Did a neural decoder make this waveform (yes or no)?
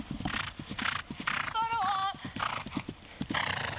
no